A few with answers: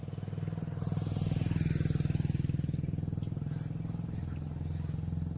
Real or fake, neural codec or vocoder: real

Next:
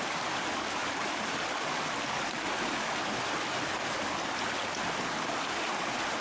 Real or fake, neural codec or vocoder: real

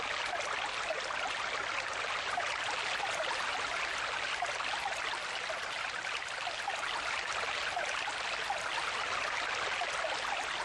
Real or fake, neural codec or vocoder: real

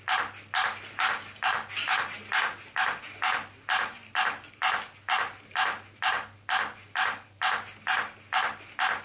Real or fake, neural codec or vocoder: real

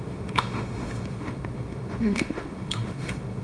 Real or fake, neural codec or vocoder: fake, autoencoder, DAC-VAE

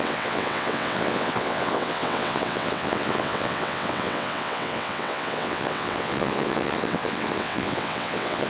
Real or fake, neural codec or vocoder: fake, vocoder, WaveNeXt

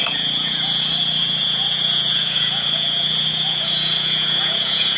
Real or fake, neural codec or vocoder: fake, vocoder, Vocos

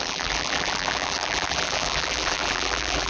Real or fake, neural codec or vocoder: fake, vocoder, BigVGAN v2